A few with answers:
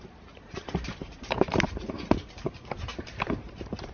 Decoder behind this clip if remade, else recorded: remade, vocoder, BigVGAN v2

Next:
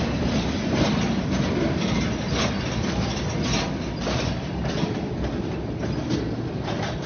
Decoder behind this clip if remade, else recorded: recorded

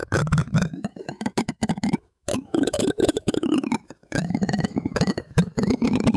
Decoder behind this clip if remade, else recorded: remade, autoencoder, DAC-VAE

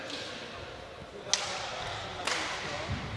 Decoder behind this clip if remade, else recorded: recorded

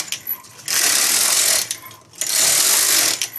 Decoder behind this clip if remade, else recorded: recorded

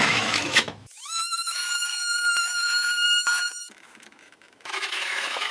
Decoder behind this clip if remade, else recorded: remade, autoencoder, DAC-VAE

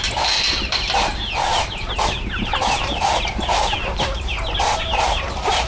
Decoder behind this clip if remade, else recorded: recorded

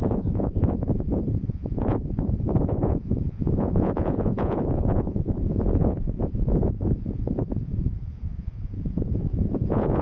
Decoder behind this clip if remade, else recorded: remade, vocoder, Vocos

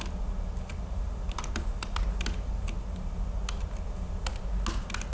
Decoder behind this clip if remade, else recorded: recorded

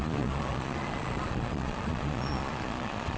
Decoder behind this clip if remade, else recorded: remade, vocoder, Vocos